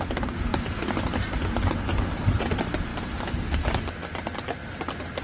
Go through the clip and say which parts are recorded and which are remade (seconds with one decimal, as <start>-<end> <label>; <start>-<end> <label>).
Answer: 0.0-5.2 recorded